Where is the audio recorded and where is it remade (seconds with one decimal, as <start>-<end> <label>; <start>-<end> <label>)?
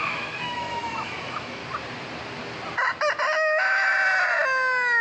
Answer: 0.0-1.6 remade; 1.6-3.2 recorded; 3.2-3.9 remade; 3.9-5.0 recorded